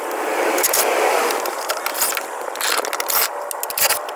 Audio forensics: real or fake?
real